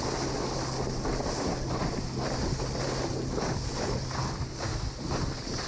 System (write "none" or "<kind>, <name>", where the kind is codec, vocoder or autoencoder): none